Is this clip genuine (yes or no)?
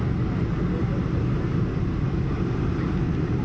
yes